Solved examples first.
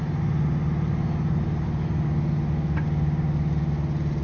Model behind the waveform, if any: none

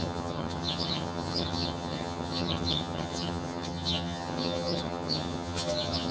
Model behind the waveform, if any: vocoder, HiFi-GAN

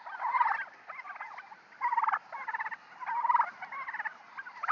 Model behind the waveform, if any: none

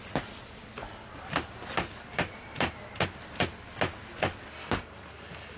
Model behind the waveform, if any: none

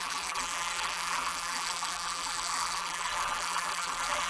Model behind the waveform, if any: vocoder, BigVGAN v2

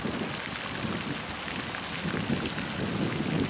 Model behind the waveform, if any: none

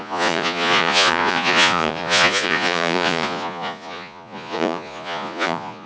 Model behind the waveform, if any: vocoder, Vocos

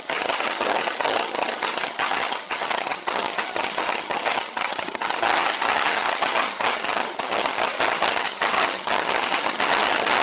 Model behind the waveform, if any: vocoder, HiFi-GAN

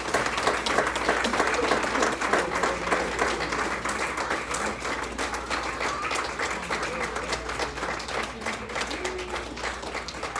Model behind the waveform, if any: none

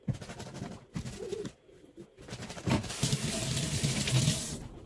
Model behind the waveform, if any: vocoder, BigVGAN v2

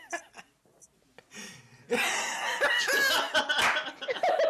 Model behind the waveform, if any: none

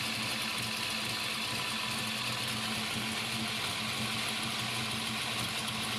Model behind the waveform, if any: none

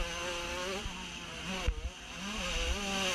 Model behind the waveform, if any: none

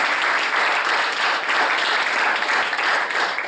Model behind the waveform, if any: none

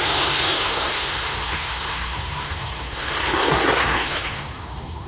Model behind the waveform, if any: codec, SNAC